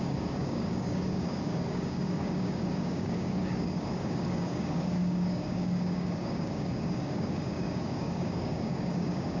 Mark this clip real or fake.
fake